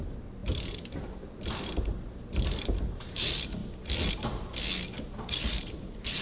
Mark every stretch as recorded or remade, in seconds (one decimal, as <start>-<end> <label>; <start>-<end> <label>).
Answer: 0.0-3.6 remade; 3.6-4.1 recorded; 4.1-4.5 remade; 4.5-5.3 recorded; 5.3-6.2 remade